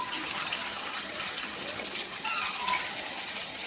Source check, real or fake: fake